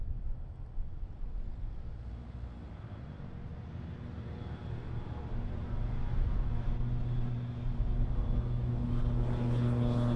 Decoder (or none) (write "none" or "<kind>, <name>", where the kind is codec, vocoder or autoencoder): none